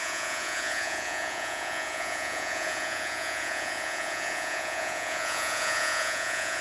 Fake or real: fake